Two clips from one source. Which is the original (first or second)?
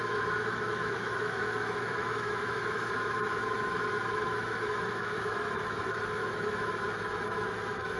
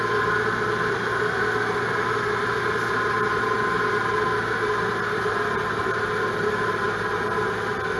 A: second